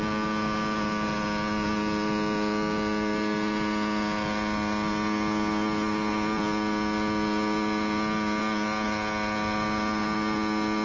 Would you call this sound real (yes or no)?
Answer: yes